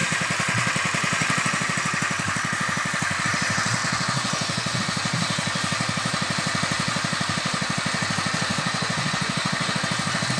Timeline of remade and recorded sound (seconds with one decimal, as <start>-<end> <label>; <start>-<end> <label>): 0.0-3.8 recorded; 3.8-4.8 remade; 4.8-8.5 recorded; 8.5-9.7 remade; 9.7-10.4 recorded